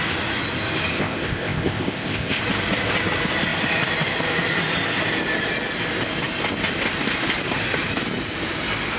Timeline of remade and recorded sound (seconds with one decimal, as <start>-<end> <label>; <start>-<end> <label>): 0.0-0.9 recorded; 0.9-2.4 remade; 2.4-9.0 recorded